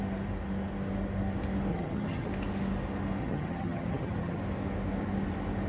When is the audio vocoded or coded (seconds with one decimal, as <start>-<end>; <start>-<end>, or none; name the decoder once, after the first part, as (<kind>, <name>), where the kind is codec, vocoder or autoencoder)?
1.7-2.3 (vocoder, HiFi-GAN); 3.2-4.4